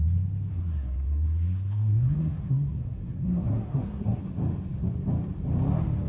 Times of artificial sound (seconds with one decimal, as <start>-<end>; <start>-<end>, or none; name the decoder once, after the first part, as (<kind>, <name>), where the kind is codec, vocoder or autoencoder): 0.5-4.2 (codec, SNAC)